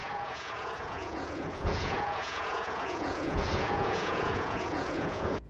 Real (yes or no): no